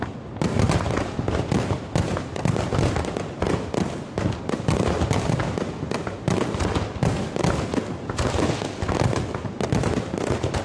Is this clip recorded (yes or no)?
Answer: yes